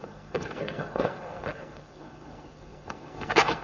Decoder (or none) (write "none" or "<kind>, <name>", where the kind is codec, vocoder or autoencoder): codec, SNAC